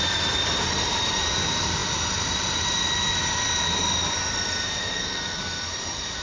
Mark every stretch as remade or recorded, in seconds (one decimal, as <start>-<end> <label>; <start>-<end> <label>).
0.0-4.8 recorded; 4.8-5.4 remade; 5.4-6.2 recorded